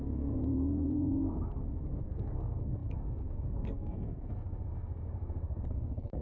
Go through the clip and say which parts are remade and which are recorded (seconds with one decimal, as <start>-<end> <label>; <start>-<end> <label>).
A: 0.0-6.2 remade